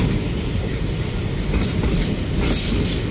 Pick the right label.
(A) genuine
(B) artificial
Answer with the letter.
A